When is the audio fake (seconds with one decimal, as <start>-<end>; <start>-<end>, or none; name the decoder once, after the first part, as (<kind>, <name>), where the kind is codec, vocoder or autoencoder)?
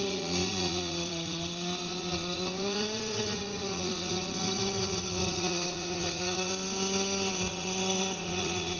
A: 0.0-6.5 (vocoder, Vocos); 7.3-8.8